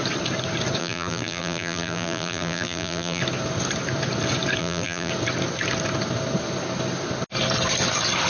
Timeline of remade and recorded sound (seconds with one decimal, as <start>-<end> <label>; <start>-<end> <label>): 0.0-0.8 recorded; 0.8-3.2 remade; 3.2-4.6 recorded; 4.6-5.1 remade; 5.1-8.3 recorded